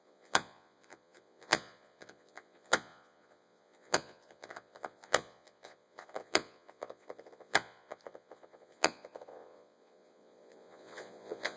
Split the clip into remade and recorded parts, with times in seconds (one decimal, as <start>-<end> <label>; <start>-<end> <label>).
0.0-11.6 remade